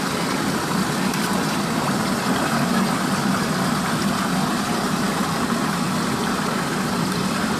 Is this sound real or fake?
real